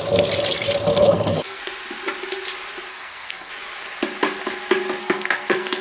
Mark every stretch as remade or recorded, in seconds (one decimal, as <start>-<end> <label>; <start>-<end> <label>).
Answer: 0.0-0.9 recorded; 0.9-1.6 remade; 1.6-2.9 recorded; 2.9-3.5 remade; 3.5-5.0 recorded; 5.0-5.8 remade

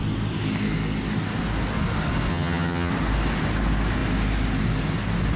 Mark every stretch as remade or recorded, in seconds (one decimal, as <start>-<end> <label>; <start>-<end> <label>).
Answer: 0.0-2.3 recorded; 2.3-2.9 remade; 2.9-5.4 recorded